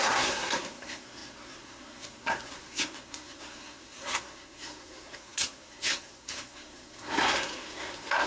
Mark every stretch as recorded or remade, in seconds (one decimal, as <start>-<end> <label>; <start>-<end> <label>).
0.0-8.3 remade